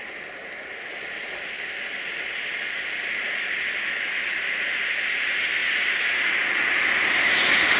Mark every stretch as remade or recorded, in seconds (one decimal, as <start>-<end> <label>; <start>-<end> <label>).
0.0-7.8 recorded